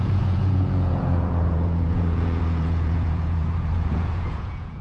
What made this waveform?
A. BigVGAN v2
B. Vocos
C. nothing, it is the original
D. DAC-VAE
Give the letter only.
B